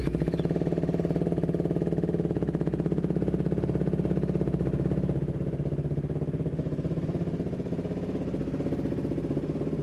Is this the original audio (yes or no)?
yes